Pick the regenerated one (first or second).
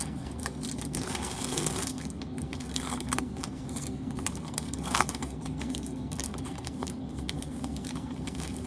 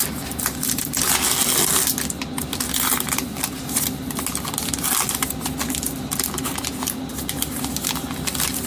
first